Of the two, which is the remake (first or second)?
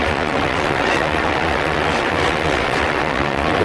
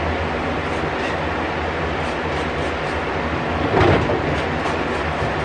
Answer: first